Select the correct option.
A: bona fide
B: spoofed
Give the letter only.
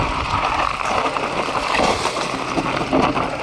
A